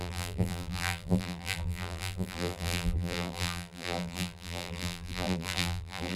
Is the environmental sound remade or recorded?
remade